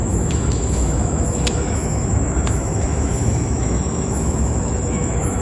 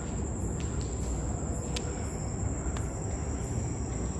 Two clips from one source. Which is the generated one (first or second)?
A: first